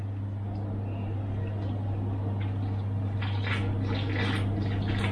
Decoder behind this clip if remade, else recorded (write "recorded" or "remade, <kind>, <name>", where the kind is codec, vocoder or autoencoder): recorded